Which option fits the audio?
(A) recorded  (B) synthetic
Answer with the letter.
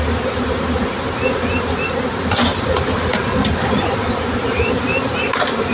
A